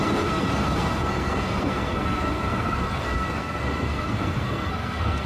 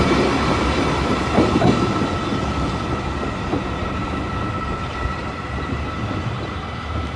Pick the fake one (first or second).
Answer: first